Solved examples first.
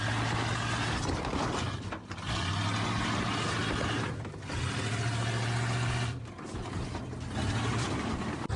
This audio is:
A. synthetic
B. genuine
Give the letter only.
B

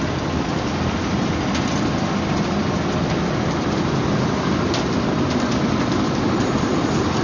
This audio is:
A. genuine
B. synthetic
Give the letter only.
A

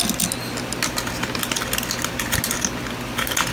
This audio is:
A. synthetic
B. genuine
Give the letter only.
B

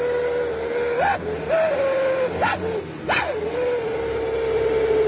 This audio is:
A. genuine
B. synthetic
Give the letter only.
A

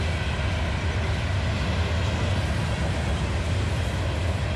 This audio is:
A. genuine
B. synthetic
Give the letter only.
A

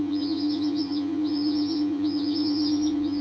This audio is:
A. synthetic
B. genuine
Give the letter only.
A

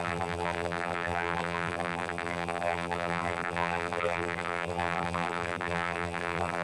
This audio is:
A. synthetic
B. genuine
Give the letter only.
A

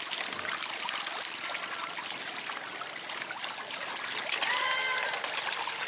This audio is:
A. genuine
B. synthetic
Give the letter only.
A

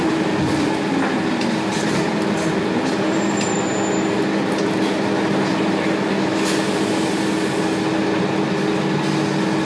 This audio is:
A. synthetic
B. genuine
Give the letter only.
B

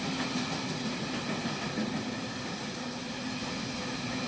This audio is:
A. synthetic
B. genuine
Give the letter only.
B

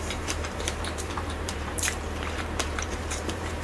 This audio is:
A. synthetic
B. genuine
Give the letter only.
A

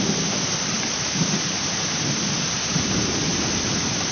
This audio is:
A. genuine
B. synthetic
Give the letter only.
B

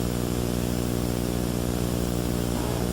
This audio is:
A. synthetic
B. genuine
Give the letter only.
B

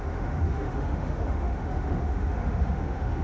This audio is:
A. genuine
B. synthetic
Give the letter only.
B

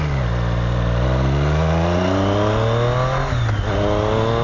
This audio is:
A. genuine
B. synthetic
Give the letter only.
A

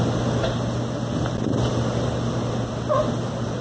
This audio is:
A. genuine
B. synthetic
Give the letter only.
A